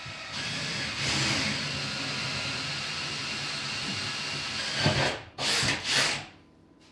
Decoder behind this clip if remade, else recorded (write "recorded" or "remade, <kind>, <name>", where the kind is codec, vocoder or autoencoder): recorded